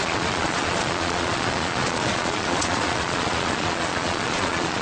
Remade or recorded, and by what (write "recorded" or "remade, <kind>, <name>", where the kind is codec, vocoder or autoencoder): remade, vocoder, Vocos